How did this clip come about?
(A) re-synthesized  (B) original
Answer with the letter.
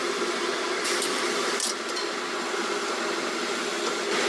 B